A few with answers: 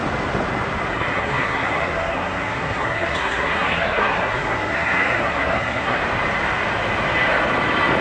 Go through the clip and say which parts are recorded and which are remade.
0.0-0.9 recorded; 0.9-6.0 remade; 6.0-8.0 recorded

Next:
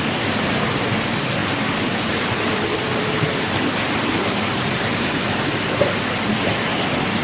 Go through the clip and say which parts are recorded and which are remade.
0.0-1.4 recorded; 1.4-5.7 remade; 5.7-7.2 recorded

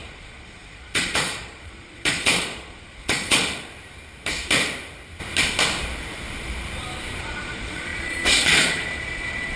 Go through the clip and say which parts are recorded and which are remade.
0.0-3.4 remade; 3.4-7.2 recorded; 7.2-9.6 remade

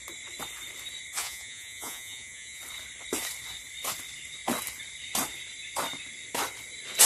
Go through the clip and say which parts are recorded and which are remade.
0.0-1.2 recorded; 1.2-2.6 remade; 2.6-7.1 recorded

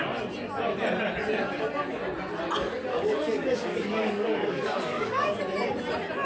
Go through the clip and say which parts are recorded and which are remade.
0.0-2.9 recorded; 2.9-5.4 remade; 5.4-6.2 recorded

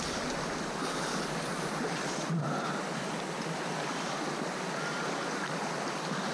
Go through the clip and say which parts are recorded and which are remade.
0.0-6.3 recorded